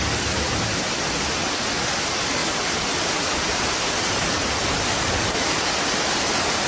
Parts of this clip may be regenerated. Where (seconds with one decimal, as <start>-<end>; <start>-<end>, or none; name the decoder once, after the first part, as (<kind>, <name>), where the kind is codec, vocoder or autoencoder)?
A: 2.4-3.9 (vocoder, BigVGAN v2)